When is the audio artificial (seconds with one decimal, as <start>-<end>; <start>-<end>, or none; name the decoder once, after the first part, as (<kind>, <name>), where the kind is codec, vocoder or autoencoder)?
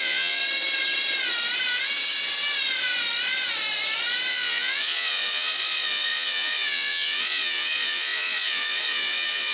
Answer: 0.0-0.4 (vocoder, Vocos); 4.3-9.5